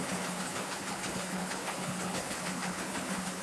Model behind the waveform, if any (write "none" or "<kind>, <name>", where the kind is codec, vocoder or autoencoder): codec, HILCodec